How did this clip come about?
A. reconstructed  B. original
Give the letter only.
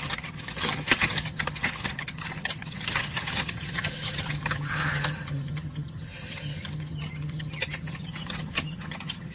A